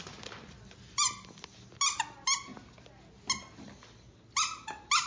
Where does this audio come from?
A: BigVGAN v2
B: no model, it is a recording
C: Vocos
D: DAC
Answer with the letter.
B